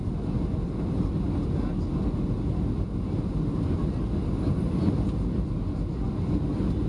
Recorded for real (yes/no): yes